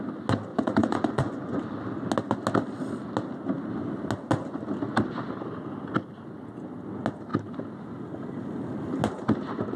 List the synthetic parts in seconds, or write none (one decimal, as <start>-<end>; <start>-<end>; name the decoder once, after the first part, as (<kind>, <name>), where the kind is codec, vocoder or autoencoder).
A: 0.5-1.6 (vocoder, Vocos)